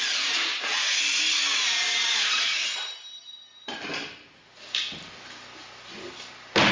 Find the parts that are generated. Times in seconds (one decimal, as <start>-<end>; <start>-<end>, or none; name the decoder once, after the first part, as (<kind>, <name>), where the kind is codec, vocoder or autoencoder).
0.5-1.0 (vocoder, Vocos)